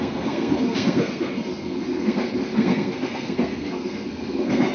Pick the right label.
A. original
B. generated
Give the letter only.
B